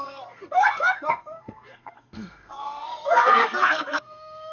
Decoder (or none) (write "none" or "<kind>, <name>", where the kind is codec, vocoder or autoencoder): codec, SNAC